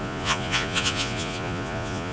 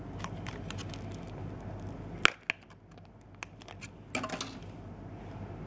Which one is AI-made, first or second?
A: first